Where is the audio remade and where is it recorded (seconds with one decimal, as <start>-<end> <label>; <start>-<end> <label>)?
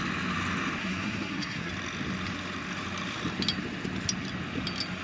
0.0-0.8 recorded; 0.8-1.7 remade; 1.7-5.0 recorded